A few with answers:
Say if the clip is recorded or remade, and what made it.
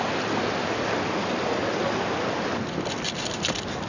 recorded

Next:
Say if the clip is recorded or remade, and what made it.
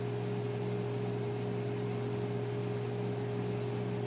recorded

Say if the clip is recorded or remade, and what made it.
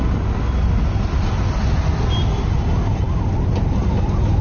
recorded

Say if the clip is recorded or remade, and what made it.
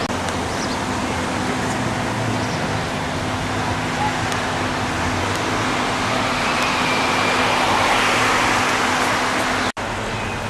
recorded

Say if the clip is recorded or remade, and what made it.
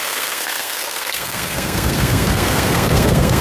remade, codec, SNAC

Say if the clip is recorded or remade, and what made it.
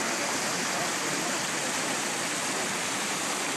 recorded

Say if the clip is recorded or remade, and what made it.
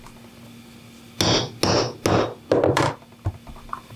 recorded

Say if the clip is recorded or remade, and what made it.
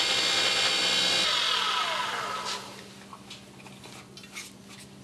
recorded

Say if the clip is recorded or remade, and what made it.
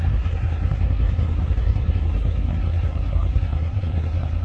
remade, codec, SNAC